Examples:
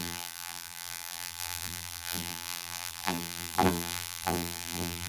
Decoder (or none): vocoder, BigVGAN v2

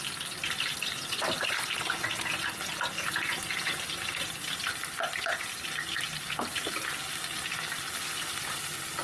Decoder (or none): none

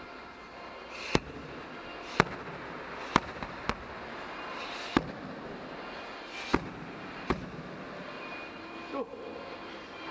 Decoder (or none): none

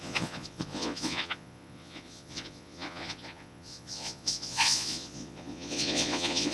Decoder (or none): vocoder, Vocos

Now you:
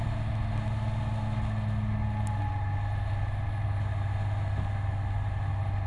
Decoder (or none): none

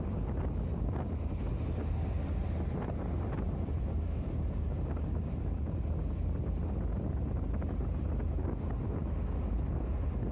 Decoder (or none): none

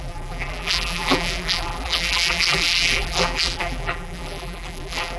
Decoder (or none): vocoder, BigVGAN v2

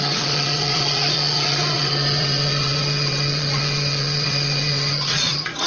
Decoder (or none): vocoder, Vocos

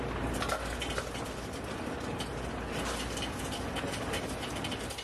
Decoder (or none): none